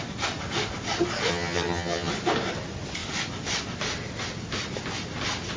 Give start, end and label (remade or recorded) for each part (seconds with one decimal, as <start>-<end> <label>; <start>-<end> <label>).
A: 0.0-1.3 recorded; 1.3-2.1 remade; 2.1-5.6 recorded